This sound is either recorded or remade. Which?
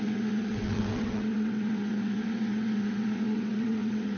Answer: remade